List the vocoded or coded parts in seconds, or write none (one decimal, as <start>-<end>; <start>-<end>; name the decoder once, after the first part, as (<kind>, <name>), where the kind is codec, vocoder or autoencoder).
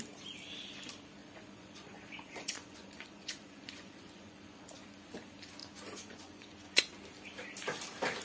1.2-5.1 (vocoder, Vocos); 5.6-6.8